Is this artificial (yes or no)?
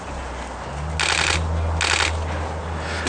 no